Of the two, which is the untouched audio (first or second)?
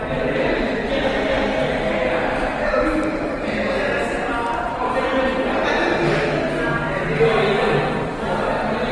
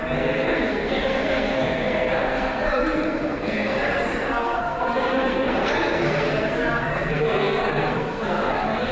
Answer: first